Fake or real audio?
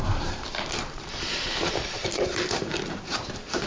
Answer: fake